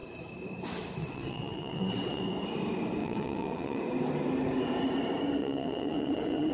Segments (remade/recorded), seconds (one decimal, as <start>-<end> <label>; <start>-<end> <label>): 0.0-1.0 recorded; 1.0-2.2 remade; 2.2-3.0 recorded; 3.0-3.8 remade; 3.8-5.4 recorded; 5.4-6.5 remade